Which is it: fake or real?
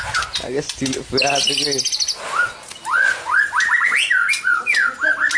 real